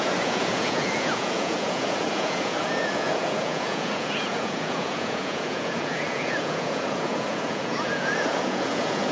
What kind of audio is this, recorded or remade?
remade